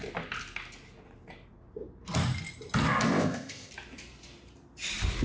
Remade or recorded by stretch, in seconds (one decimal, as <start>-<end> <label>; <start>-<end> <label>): 0.0-3.1 recorded; 3.1-3.7 remade; 3.7-5.2 recorded